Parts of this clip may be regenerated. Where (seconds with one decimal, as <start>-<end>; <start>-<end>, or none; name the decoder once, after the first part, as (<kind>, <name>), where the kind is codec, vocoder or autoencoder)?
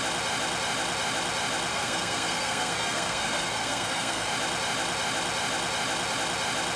1.7-4.3 (codec, SNAC)